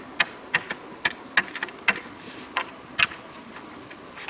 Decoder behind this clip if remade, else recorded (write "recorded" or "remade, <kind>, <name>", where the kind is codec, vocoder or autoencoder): recorded